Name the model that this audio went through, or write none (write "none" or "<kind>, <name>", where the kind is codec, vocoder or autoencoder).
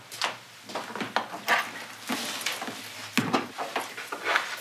none